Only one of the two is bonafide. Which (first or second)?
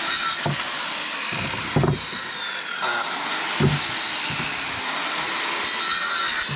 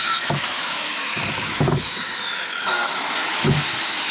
first